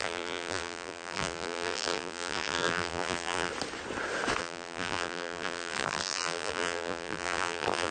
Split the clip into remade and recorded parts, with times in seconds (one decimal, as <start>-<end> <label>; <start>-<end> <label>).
0.0-3.5 remade; 3.5-4.4 recorded; 4.4-7.9 remade